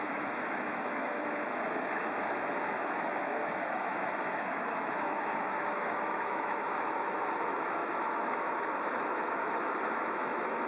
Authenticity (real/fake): fake